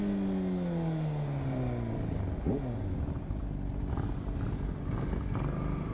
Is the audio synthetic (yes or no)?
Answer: no